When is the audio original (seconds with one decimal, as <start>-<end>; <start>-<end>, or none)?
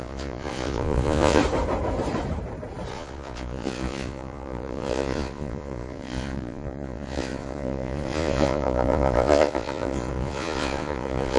1.4-2.9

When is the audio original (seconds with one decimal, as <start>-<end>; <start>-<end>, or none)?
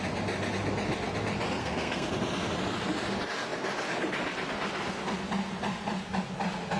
0.0-1.6; 2.1-6.8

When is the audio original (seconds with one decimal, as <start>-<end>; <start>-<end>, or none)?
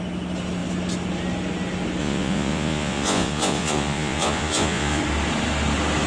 0.0-2.0; 5.0-6.1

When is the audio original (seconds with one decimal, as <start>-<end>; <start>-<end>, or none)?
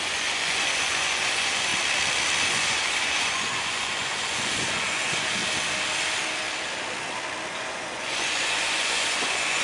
1.7-2.4; 5.4-7.5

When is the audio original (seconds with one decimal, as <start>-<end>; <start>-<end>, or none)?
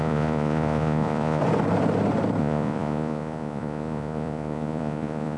1.4-2.4